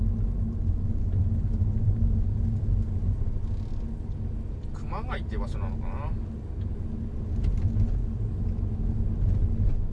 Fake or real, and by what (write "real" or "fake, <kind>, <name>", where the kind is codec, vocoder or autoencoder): real